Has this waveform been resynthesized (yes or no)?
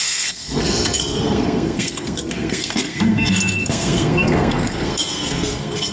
yes